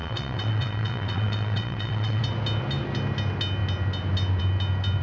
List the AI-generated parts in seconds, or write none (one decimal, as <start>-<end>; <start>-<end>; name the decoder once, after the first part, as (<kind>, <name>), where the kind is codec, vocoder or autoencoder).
0.0-2.2 (vocoder, WaveNeXt)